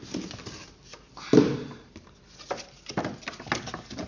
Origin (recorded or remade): recorded